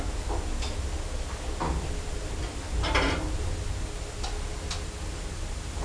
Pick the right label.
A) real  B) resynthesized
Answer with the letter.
A